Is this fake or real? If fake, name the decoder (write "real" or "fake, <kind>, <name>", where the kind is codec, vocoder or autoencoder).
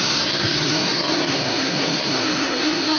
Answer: fake, codec, SNAC